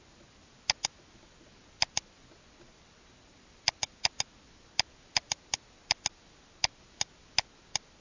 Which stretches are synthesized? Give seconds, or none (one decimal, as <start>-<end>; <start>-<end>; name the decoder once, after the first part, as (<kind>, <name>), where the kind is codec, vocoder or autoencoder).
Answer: none